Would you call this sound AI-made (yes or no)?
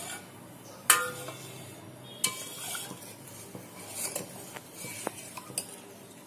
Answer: no